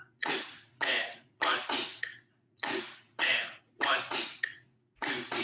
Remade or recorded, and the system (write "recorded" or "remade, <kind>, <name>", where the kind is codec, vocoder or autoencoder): remade, vocoder, Vocos